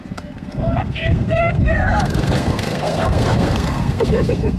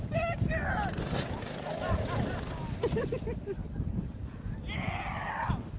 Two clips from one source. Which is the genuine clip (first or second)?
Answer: second